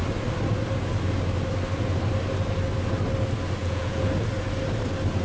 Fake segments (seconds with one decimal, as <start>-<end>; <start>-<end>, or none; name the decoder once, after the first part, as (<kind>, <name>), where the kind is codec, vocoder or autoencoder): 3.6-4.1 (vocoder, Vocos)